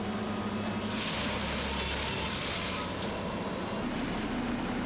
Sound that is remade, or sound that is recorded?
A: recorded